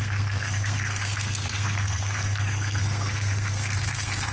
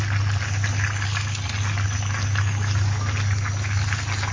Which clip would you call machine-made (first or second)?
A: first